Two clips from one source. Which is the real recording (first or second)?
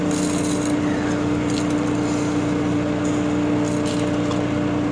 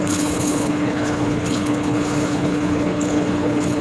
first